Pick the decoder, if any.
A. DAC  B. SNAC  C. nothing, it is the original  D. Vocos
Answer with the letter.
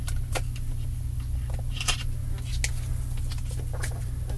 C